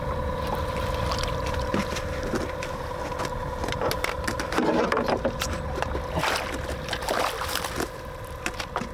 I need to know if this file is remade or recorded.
recorded